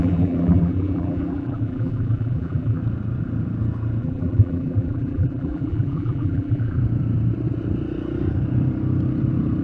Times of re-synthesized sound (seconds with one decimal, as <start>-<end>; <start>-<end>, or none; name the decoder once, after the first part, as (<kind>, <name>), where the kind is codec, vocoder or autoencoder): 0.0-2.8 (vocoder, BigVGAN v2); 4.0-6.8